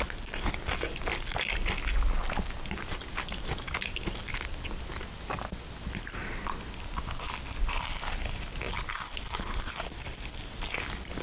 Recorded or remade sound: recorded